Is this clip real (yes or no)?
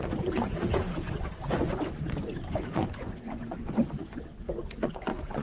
no